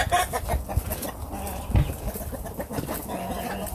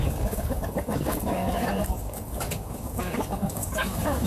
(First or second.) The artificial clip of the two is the second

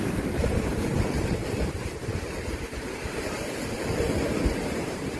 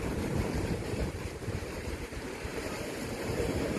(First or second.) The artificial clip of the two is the second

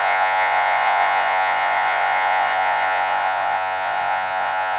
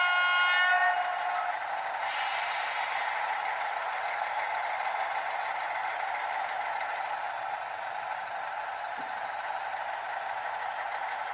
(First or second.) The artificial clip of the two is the first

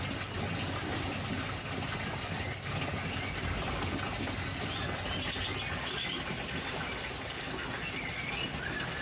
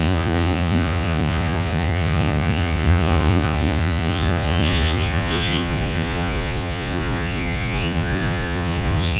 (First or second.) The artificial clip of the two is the second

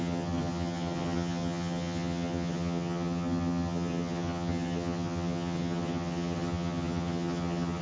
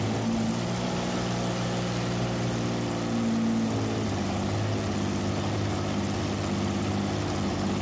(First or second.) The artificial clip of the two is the first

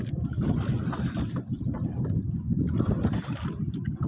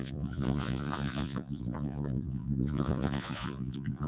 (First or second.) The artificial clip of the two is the second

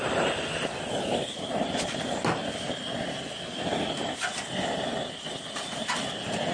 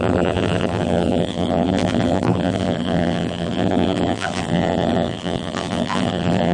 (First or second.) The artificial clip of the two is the second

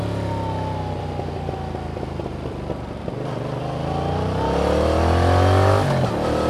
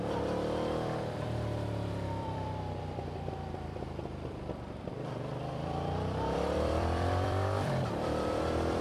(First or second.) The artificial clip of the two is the second